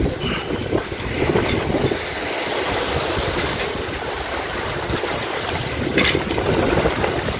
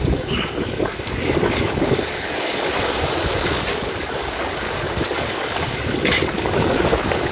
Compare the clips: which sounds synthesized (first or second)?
second